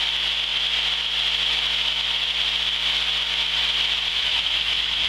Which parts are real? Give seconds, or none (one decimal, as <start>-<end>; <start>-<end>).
0.0-4.1